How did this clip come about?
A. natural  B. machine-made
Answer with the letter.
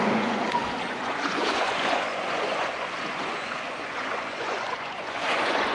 B